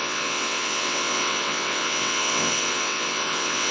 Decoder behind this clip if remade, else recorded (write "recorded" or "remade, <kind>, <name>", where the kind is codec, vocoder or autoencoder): remade, vocoder, WaveNeXt